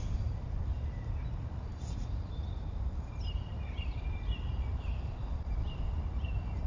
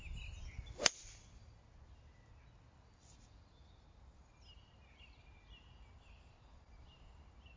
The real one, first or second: second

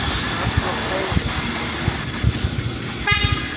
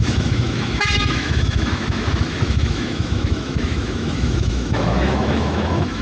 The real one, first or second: first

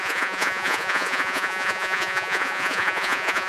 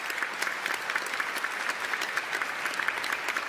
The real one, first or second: second